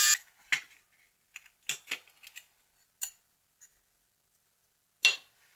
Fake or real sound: real